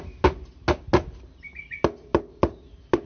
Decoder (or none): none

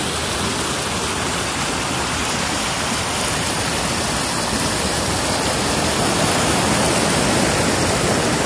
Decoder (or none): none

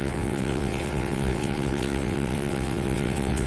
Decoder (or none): vocoder, WaveNeXt